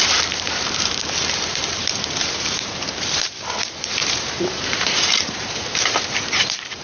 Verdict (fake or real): fake